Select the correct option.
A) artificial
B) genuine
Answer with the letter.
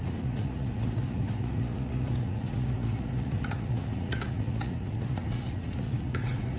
A